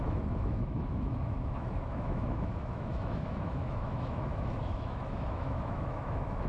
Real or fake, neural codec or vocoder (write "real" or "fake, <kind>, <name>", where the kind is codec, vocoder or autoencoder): fake, autoencoder, DAC-VAE